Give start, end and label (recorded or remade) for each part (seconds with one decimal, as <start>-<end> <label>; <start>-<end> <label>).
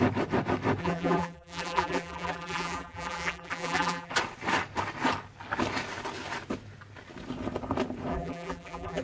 0.0-0.8 recorded; 0.8-4.1 remade; 4.1-8.1 recorded; 8.1-9.0 remade